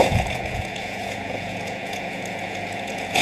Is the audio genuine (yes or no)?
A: no